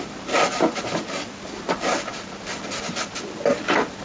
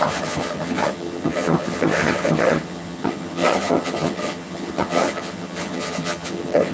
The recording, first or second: first